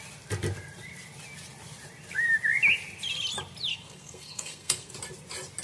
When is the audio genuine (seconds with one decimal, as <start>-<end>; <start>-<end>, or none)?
0.0-3.7; 4.9-5.6